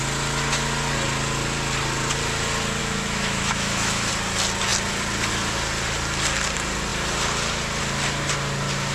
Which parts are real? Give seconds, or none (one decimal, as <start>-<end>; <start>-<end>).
0.0-2.8; 4.1-8.9

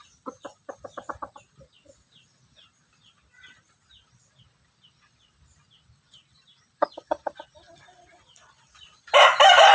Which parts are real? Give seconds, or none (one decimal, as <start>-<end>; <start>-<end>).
0.0-9.7

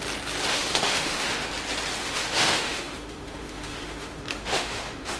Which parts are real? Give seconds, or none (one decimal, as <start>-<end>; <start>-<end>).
0.0-0.5; 1.5-2.0

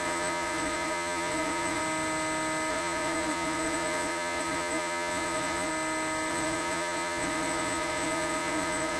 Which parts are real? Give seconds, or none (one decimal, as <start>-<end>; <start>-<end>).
1.8-2.7; 5.7-6.3